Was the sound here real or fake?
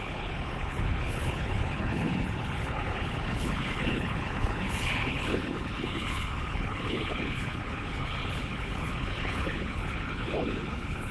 fake